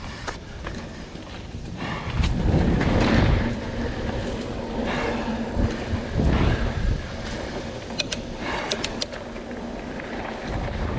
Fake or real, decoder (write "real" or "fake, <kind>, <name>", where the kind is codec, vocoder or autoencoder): fake, vocoder, BigVGAN v2